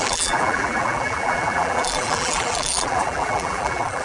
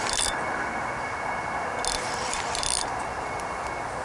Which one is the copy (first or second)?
first